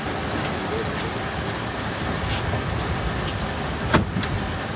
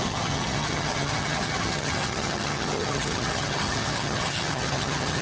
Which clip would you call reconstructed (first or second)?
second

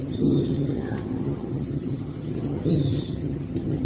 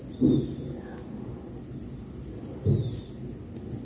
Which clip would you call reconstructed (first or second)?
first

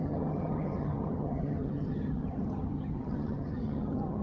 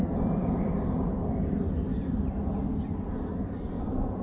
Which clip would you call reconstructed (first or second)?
first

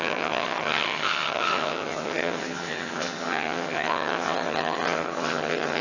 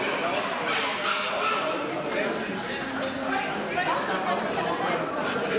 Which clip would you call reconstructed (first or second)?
first